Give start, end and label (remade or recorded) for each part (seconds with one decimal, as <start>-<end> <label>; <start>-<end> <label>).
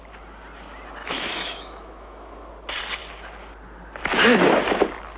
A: 0.0-1.0 recorded; 1.0-2.5 remade; 2.5-5.2 recorded